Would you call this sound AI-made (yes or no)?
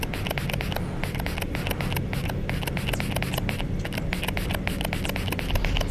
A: no